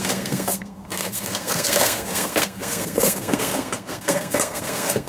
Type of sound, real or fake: fake